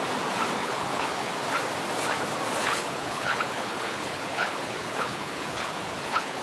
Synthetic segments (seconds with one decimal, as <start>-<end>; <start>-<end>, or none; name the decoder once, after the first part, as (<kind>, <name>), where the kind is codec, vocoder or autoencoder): 0.6-1.3 (codec, HILCodec); 2.6-6.4